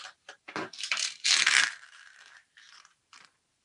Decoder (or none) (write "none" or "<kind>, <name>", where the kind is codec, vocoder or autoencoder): vocoder, BigVGAN v2